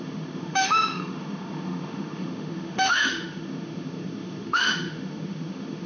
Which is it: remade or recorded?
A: remade